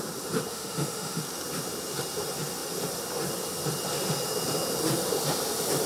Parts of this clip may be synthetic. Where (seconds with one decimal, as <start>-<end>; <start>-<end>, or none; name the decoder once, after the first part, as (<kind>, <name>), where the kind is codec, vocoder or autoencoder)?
0.5-1.2 (autoencoder, DAC-VAE)